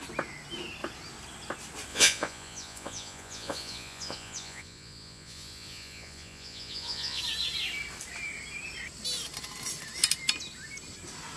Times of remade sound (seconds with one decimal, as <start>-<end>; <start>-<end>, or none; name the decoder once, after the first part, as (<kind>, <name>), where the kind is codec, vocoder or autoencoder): 1.9-7.2 (vocoder, Vocos)